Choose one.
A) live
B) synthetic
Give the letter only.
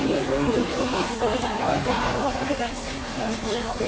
B